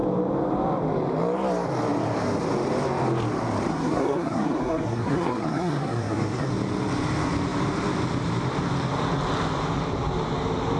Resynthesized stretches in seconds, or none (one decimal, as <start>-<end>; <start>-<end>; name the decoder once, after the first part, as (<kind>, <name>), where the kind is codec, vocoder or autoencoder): 3.7-6.5 (codec, SNAC)